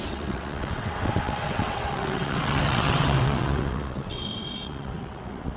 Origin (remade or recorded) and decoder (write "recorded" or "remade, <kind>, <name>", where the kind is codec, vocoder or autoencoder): remade, vocoder, WaveNeXt